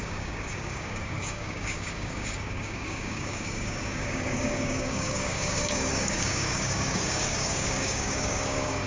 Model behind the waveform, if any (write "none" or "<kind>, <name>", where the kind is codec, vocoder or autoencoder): codec, DAC